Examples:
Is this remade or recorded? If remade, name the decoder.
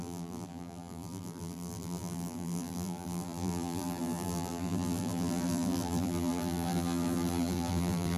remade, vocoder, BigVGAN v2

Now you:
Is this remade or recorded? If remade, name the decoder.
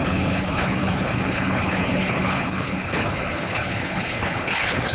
remade, codec, HILCodec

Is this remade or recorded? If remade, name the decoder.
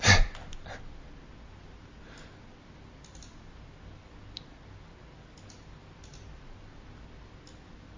recorded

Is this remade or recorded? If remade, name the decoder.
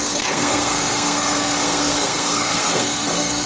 remade, codec, SNAC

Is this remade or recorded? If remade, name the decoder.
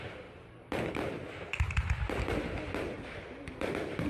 recorded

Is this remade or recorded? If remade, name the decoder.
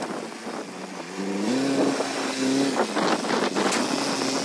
recorded